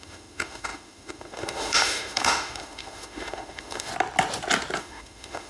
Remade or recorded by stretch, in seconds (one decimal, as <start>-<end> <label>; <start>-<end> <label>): 0.0-3.9 remade; 3.9-4.8 recorded; 4.8-5.5 remade